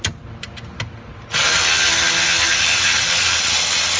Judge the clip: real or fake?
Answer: real